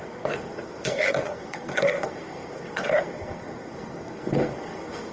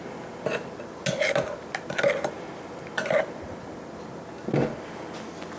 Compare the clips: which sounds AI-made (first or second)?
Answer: first